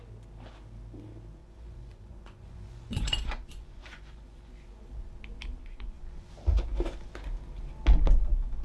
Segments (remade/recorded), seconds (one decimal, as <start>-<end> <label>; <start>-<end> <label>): 0.0-1.4 recorded; 1.4-4.9 remade; 4.9-5.6 recorded; 5.6-6.3 remade; 6.3-8.6 recorded

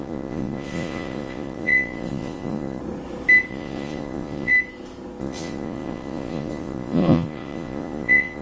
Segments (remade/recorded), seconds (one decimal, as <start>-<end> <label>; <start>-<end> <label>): 0.0-2.8 remade; 2.8-3.5 recorded; 3.5-4.5 remade; 4.5-5.2 recorded; 5.2-8.4 remade

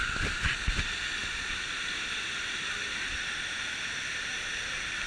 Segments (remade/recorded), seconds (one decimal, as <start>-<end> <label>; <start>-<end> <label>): 0.0-5.1 recorded

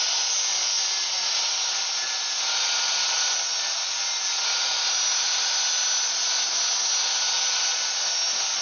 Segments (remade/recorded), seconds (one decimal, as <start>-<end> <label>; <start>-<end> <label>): 0.0-8.6 recorded